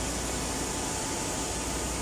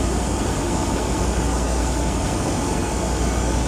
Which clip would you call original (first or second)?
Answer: first